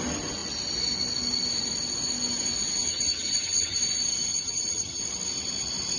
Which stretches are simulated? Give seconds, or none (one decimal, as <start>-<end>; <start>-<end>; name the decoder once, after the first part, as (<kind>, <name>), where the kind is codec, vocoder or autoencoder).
2.9-3.8 (vocoder, HiFi-GAN); 4.3-5.0